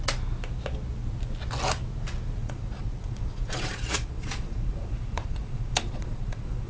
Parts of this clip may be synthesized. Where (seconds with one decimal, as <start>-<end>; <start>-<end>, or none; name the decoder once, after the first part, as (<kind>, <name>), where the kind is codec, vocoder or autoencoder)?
2.4-6.7 (vocoder, Vocos)